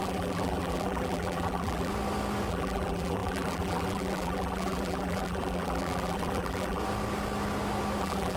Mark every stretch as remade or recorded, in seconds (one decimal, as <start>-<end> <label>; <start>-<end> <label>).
0.0-1.9 remade; 1.9-2.5 recorded; 2.5-6.8 remade; 6.8-8.0 recorded; 8.0-8.4 remade